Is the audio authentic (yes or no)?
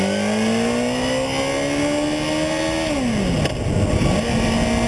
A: yes